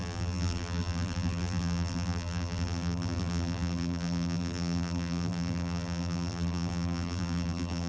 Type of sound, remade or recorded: remade